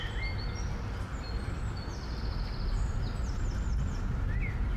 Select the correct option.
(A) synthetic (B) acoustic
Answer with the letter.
B